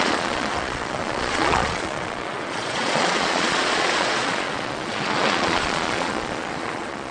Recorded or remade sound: remade